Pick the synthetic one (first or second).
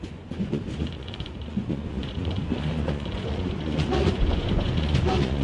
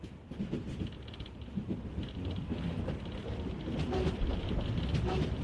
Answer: first